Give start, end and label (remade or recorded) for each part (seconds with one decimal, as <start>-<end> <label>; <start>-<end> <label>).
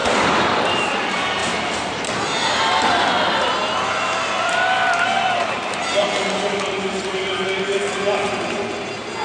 0.0-0.7 remade; 0.7-9.2 recorded